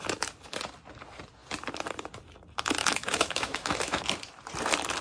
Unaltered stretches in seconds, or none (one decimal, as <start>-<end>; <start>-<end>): 0.0-2.8; 4.1-5.0